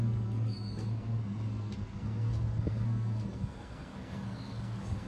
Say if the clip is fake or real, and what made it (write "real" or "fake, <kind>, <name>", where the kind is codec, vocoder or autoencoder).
fake, codec, SNAC